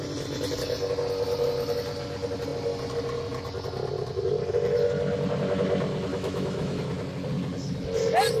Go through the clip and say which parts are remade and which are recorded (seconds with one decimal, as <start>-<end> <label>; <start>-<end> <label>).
0.0-6.1 recorded; 6.1-6.8 remade; 6.8-8.4 recorded